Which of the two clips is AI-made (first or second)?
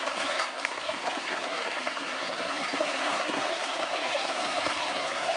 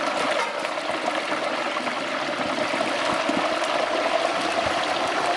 first